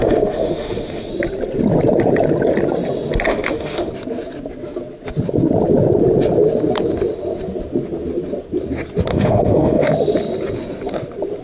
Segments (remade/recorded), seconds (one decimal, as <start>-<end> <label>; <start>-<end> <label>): 0.0-1.1 remade; 1.1-3.3 recorded; 3.3-3.9 remade; 3.9-9.1 recorded; 9.1-9.9 remade; 9.9-11.4 recorded